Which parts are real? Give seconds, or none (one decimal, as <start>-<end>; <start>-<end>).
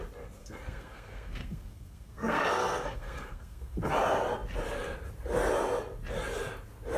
0.0-0.4; 3.9-7.0